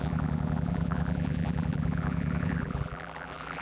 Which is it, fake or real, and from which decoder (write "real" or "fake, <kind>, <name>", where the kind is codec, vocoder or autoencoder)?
fake, vocoder, BigVGAN v2